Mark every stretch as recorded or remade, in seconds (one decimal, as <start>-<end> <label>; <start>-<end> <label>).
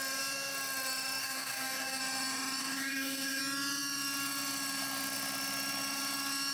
0.0-1.2 recorded; 1.2-2.0 remade; 2.0-2.6 recorded; 2.6-3.4 remade; 3.4-6.5 recorded